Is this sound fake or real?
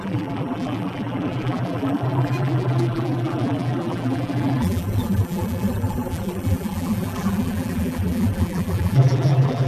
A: fake